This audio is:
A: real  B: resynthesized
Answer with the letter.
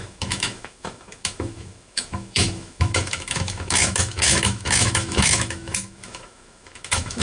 B